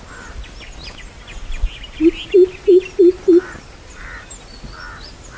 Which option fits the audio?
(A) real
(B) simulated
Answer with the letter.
A